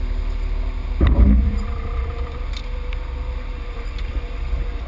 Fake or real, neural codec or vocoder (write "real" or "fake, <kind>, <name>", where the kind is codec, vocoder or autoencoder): fake, vocoder, BigVGAN v2